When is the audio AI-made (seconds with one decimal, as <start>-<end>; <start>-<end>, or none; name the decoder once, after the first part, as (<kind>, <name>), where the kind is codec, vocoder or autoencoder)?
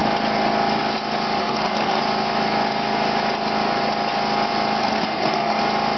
1.4-2.0 (codec, SNAC); 4.8-5.6